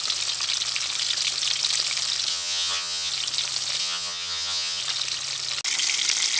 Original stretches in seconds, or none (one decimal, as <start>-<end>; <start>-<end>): 0.0-2.3; 3.1-3.8; 4.8-6.4